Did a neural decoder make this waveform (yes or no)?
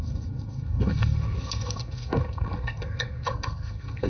yes